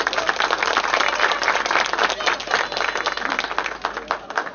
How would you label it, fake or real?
real